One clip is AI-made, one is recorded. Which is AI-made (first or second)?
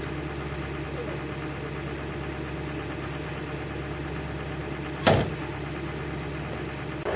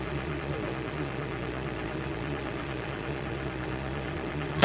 second